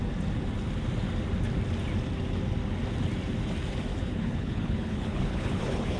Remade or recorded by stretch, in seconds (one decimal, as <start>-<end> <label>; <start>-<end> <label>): 0.0-3.9 recorded; 3.9-6.0 remade